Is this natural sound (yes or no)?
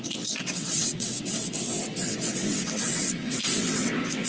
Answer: no